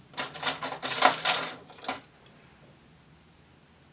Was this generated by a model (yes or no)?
no